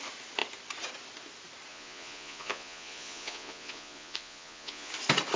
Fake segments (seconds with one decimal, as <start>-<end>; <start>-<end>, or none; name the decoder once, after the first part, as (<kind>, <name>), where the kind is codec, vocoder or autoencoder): 1.7-4.9 (vocoder, Vocos)

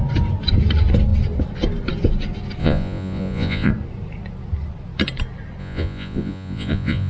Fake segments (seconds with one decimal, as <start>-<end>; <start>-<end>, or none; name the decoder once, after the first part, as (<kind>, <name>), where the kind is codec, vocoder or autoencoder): 2.6-3.7 (vocoder, Vocos); 5.6-7.1

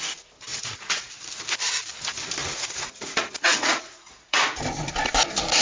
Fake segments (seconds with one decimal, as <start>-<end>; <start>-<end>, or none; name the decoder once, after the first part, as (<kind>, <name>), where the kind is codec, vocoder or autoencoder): 0.5-1.1 (vocoder, Vocos); 2.4-4.4

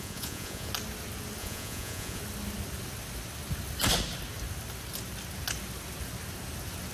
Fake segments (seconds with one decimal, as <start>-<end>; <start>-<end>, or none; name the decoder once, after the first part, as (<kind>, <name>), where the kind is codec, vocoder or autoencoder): 0.0-0.7 (vocoder, Vocos); 1.4-2.2

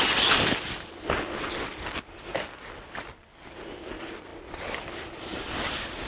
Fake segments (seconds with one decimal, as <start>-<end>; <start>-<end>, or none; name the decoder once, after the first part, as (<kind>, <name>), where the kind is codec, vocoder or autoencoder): none

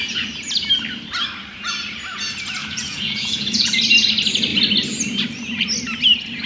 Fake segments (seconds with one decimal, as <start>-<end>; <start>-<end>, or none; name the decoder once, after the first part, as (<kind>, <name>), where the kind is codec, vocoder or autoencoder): 2.6-3.8 (vocoder, Vocos)

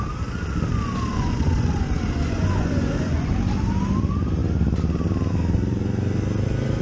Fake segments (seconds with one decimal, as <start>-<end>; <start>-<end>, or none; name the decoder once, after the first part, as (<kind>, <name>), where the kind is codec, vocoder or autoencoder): 1.1-3.3 (vocoder, Vocos)

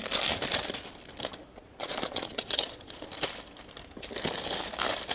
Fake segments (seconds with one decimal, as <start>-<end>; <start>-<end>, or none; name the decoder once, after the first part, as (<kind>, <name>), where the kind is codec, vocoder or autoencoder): 1.6-3.1 (vocoder, Vocos)